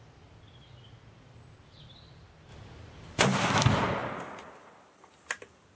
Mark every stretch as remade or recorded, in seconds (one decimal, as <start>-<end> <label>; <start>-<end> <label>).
0.0-5.8 recorded